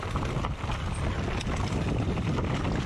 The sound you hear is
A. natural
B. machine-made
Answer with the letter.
A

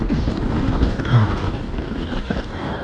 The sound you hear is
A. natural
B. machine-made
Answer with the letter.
B